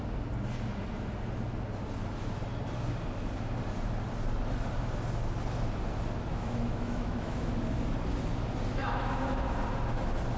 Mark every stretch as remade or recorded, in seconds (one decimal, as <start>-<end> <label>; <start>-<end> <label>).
0.0-6.3 recorded; 6.3-7.5 remade; 7.5-8.8 recorded; 8.8-9.6 remade; 9.6-10.4 recorded